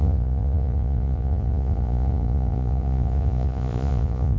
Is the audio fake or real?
fake